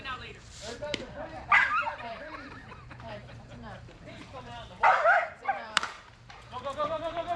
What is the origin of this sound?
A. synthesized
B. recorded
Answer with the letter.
A